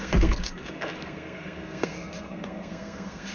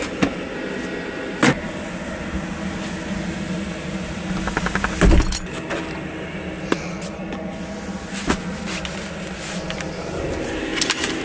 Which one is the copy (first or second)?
first